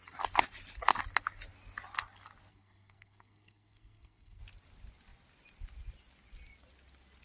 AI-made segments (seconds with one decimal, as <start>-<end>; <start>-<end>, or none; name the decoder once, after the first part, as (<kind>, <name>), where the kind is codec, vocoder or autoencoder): 2.5-4.4 (codec, SNAC)